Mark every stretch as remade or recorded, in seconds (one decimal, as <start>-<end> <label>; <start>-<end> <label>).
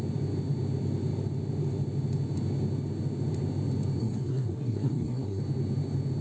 0.0-4.0 recorded; 4.0-5.4 remade; 5.4-6.2 recorded